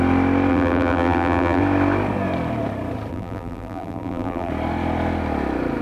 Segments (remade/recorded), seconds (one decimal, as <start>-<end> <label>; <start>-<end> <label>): 0.0-0.5 recorded; 0.5-1.6 remade; 1.6-3.1 recorded; 3.1-4.5 remade; 4.5-5.8 recorded